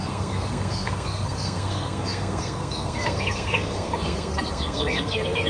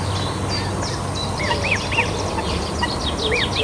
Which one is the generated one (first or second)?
first